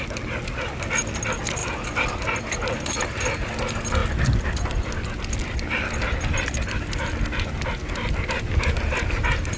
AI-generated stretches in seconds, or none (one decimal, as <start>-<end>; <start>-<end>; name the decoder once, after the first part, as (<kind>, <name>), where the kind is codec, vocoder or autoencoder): none